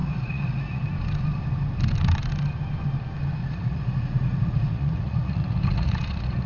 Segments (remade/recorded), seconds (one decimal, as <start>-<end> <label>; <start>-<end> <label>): 0.0-0.8 remade; 0.8-3.4 recorded; 3.4-6.5 remade

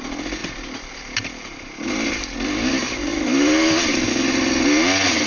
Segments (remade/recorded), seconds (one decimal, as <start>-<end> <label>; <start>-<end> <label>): 0.0-5.3 recorded

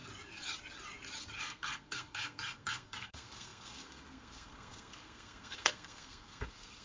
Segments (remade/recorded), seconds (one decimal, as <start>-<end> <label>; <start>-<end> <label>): 0.0-1.4 recorded; 1.4-6.8 remade

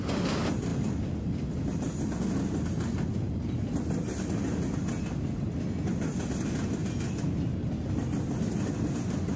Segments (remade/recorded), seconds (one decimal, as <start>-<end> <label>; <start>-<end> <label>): 0.0-9.4 recorded

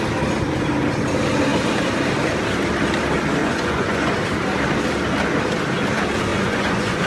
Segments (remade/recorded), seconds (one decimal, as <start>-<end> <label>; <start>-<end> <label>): 0.0-3.4 recorded; 3.4-4.1 remade; 4.1-6.3 recorded; 6.3-7.1 remade

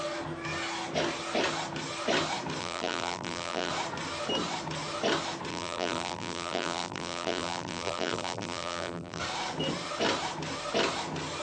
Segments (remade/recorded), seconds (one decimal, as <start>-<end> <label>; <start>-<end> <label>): 0.0-2.6 recorded; 2.6-3.7 remade; 3.7-5.5 recorded; 5.5-9.2 remade; 9.2-11.4 recorded